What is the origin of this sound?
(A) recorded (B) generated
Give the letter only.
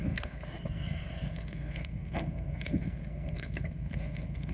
B